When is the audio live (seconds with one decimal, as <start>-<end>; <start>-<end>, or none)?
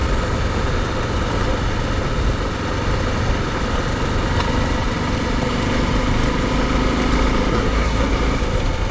0.0-7.5; 8.1-8.9